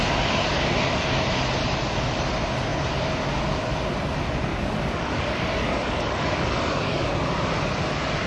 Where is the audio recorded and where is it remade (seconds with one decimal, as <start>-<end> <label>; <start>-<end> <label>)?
0.0-4.5 recorded; 4.5-7.1 remade; 7.1-8.3 recorded